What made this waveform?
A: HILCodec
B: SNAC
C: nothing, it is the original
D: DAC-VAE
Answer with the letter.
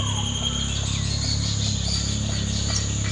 C